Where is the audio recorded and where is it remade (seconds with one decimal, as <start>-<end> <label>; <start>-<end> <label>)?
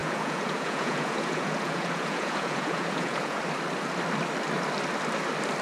0.0-3.4 remade; 3.4-5.6 recorded